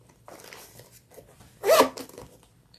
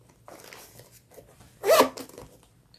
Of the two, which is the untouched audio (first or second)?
second